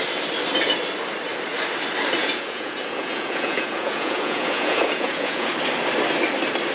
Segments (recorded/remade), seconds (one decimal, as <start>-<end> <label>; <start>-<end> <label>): 0.0-2.2 recorded; 2.2-5.5 remade; 5.5-6.7 recorded